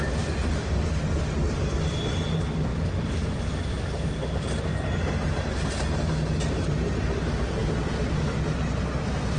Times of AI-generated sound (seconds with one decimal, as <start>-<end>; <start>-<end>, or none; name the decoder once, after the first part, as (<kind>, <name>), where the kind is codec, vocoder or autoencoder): none